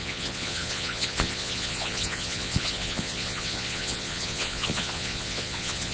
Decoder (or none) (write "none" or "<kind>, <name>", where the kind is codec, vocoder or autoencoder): vocoder, Vocos